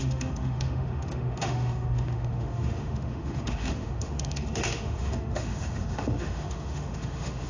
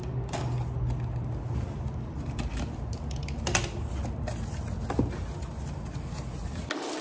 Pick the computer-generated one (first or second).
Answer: first